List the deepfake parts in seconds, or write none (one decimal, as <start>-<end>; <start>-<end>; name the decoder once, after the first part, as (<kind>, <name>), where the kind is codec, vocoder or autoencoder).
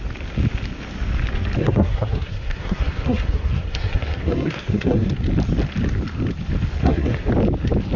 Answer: 1.6-5.1 (codec, SNAC); 6.8-7.3